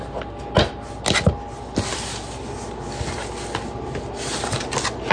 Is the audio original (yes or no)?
yes